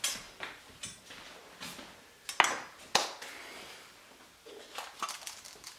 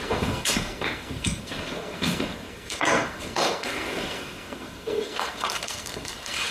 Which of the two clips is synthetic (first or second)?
second